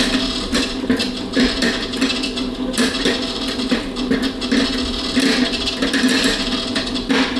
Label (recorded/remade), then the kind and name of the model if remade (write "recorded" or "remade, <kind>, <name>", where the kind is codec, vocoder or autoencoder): recorded